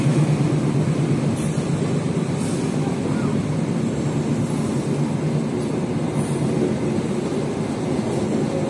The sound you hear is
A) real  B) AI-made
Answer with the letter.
A